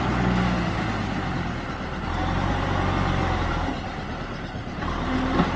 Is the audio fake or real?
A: real